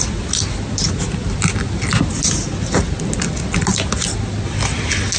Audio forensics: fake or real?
real